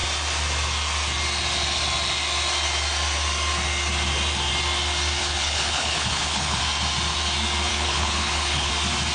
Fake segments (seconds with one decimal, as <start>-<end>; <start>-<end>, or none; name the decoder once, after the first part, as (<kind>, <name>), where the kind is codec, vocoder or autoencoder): 5.2-6.6 (codec, HILCodec); 7.7-8.7